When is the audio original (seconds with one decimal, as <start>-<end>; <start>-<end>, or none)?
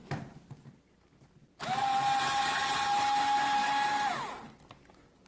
0.0-5.3